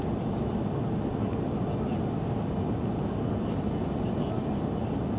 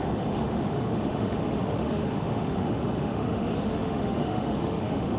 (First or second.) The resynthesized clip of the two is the second